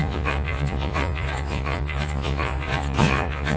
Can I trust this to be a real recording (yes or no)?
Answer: no